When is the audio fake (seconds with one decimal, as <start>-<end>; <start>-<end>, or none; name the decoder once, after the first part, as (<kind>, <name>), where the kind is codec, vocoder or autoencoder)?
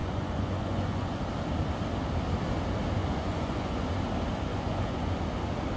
0.0-1.2 (vocoder, Vocos); 3.0-3.8; 4.5-5.1